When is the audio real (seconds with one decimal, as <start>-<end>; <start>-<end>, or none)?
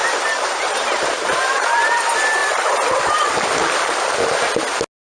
2.0-2.4; 3.3-5.2